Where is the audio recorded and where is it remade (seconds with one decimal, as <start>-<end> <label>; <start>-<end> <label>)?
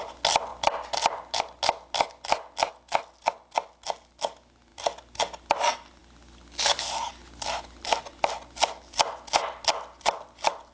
0.0-10.7 recorded